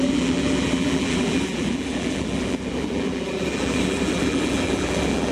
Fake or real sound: fake